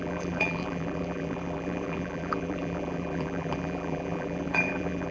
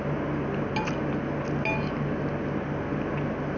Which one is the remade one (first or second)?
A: first